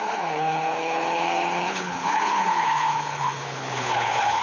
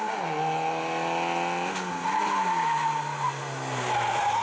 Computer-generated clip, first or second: first